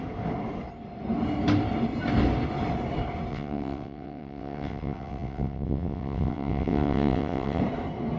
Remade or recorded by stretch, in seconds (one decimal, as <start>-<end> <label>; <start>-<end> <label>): 0.0-3.3 recorded; 3.3-7.6 remade; 7.6-8.2 recorded